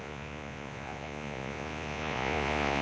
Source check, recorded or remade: remade